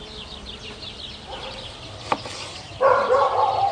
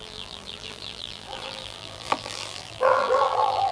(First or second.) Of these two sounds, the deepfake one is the second